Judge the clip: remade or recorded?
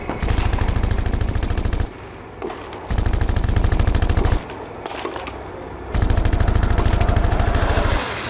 recorded